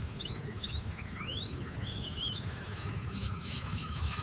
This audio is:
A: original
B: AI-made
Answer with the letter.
B